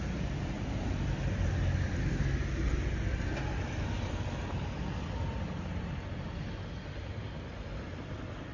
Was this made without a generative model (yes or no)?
yes